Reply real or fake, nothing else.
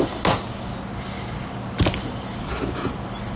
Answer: real